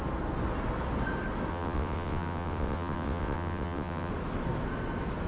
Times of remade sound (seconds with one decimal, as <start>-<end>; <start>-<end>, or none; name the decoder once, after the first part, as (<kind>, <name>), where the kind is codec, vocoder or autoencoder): 1.5-4.1 (vocoder, WaveNeXt)